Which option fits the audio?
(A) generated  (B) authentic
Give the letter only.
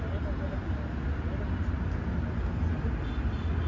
B